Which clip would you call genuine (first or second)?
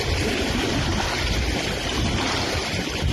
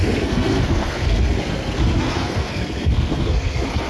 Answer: first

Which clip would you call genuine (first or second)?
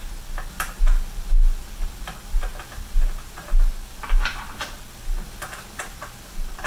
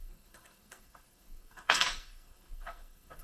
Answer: first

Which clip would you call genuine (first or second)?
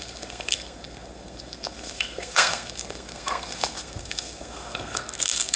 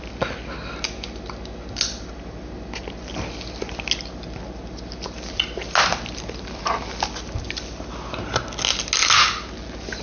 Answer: second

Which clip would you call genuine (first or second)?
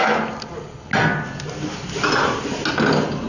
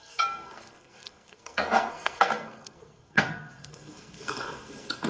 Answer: first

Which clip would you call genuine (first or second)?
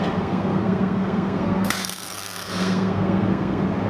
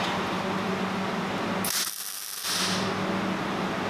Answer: second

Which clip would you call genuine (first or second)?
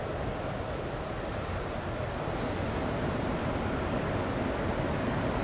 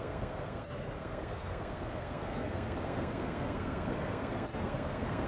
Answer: first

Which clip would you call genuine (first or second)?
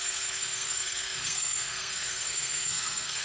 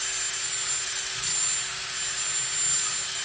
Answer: second